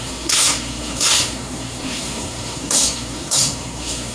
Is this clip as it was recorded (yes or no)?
no